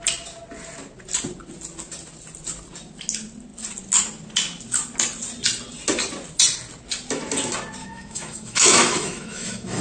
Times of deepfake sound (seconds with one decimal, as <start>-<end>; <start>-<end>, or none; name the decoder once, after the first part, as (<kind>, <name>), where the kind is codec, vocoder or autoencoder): 7.8-9.8 (autoencoder, DAC-VAE)